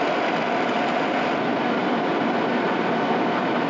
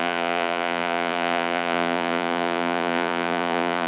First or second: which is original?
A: first